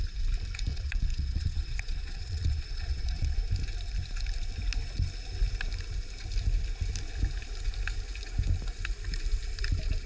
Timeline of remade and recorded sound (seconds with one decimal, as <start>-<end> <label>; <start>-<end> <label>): 0.0-0.7 recorded; 0.7-3.4 remade; 3.4-10.1 recorded